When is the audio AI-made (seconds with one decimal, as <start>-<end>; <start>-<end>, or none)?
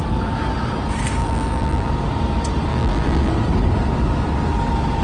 1.2-1.9; 2.7-3.3